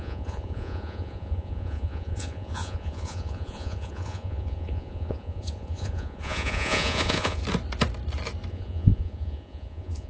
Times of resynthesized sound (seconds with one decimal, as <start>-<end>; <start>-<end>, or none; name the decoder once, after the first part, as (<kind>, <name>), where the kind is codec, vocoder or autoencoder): 0.0-7.4 (vocoder, Vocos); 8.5-10.1